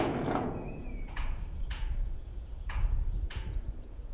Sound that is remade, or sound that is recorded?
remade